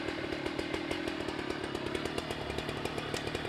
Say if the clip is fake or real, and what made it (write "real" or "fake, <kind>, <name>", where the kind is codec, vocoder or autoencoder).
real